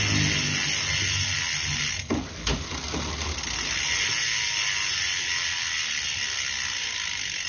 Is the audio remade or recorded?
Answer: recorded